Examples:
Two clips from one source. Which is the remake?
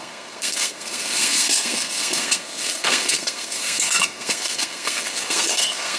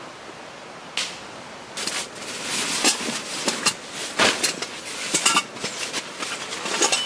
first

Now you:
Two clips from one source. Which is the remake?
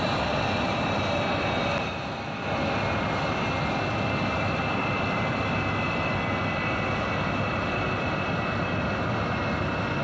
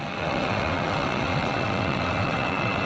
second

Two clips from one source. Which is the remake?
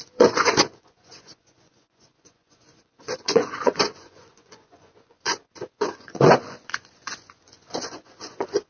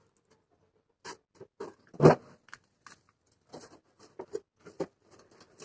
first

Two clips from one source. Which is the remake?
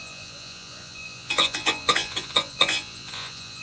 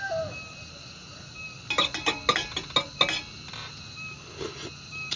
first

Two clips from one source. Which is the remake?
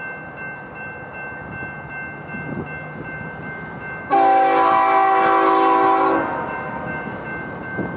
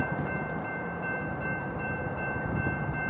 second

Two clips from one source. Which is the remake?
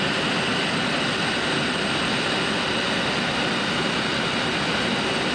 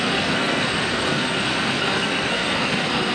second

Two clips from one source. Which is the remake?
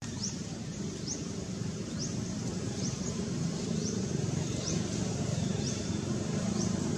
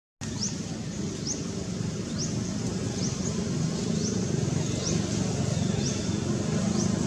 first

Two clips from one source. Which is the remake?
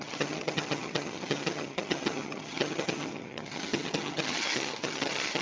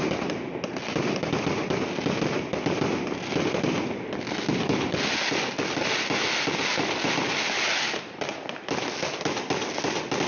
first